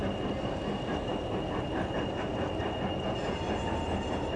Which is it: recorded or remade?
recorded